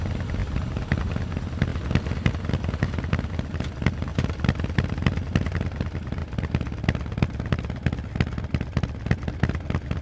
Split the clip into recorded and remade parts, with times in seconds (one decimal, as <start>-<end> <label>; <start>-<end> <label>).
0.0-10.0 recorded